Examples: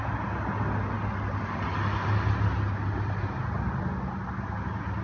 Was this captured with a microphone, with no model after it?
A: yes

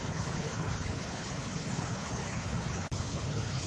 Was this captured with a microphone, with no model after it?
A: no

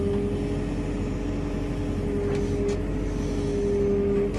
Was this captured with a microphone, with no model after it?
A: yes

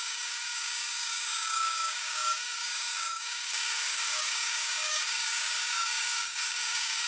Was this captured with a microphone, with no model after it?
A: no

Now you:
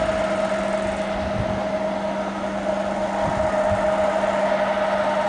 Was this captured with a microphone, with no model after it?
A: yes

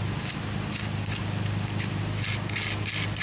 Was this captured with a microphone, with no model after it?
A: yes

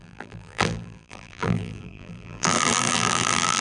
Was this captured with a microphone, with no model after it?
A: no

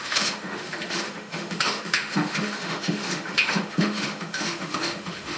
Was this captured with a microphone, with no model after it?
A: no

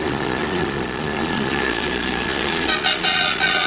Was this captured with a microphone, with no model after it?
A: no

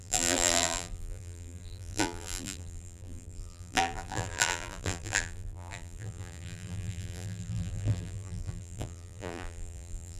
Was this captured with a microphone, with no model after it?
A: no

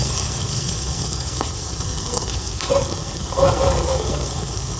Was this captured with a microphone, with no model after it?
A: no